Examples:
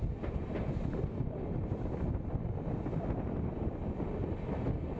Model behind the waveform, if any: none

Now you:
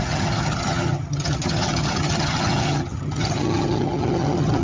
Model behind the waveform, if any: vocoder, HiFi-GAN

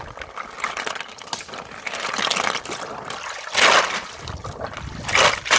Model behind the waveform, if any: none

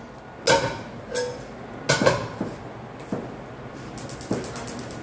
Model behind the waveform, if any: none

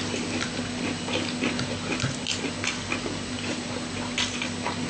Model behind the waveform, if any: none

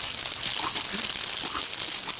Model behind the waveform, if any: none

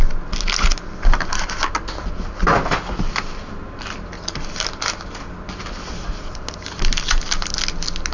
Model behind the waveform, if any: none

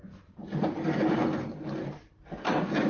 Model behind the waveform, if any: none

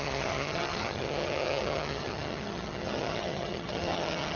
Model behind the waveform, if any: vocoder, HiFi-GAN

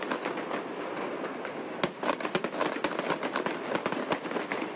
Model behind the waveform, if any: none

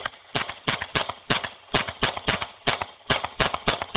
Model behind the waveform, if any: vocoder, HiFi-GAN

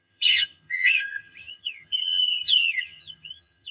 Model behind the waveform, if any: vocoder, HiFi-GAN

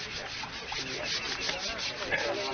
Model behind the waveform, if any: none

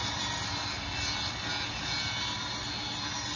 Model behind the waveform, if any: none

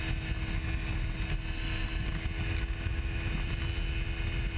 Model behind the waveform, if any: none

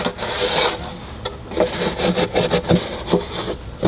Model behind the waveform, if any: none